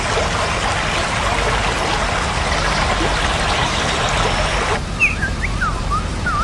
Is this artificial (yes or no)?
no